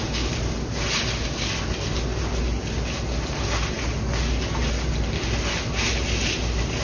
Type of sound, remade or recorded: recorded